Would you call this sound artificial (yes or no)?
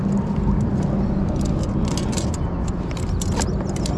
no